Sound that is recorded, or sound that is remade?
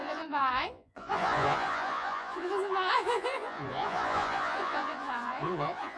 remade